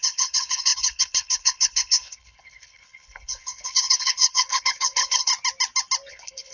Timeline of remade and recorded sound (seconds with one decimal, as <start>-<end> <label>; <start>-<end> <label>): 0.0-5.3 remade; 5.3-6.1 recorded; 6.1-6.5 remade